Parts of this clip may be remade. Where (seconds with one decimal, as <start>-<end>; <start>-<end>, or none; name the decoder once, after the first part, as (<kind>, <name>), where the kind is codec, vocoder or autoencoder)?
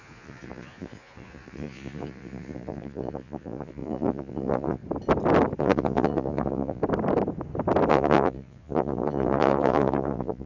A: 0.0-4.8 (vocoder, Vocos); 5.6-6.8; 7.9-10.5